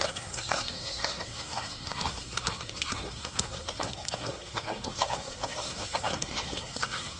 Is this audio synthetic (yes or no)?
yes